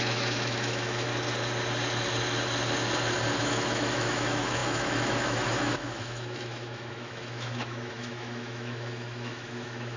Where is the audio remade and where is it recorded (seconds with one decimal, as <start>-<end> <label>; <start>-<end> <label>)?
0.0-1.1 remade; 1.1-3.4 recorded; 3.4-10.0 remade